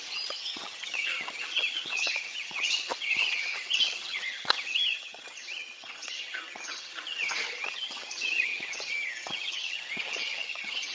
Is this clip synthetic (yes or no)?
yes